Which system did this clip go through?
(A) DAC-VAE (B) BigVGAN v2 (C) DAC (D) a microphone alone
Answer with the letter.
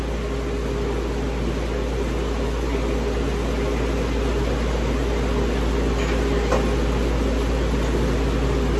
D